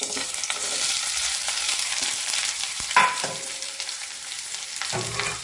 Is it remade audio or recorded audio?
remade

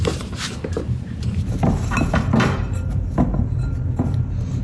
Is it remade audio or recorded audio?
remade